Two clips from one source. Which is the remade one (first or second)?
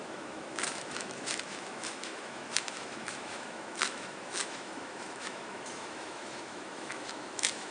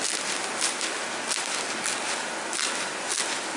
first